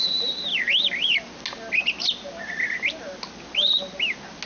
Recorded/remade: recorded